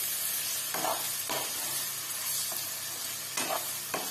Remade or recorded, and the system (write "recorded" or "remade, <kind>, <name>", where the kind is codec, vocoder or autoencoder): recorded